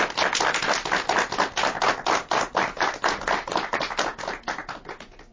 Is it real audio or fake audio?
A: real